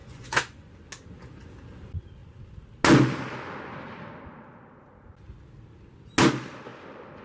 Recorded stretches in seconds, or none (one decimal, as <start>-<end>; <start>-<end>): 0.7-7.2